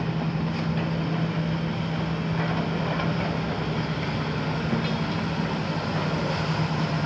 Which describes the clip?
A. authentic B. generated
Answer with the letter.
A